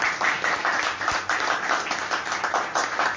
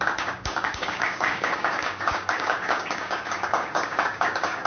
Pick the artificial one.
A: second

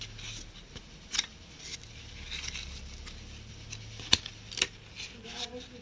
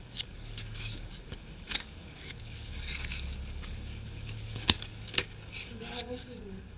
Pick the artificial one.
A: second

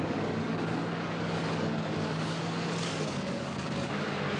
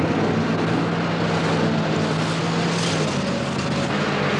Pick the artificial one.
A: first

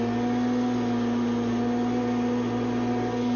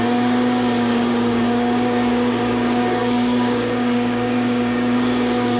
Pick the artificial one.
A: second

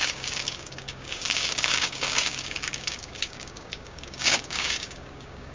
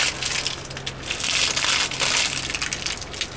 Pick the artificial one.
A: first